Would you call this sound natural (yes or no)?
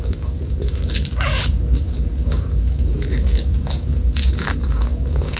no